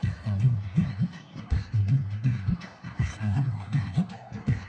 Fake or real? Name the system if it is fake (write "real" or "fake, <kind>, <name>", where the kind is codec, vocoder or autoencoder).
fake, codec, SNAC